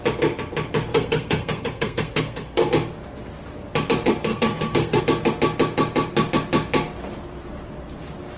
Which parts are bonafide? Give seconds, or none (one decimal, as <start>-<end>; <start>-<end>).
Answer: 0.0-0.9; 2.7-4.3; 5.0-8.4